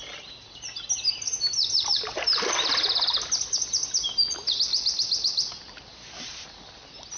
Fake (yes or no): no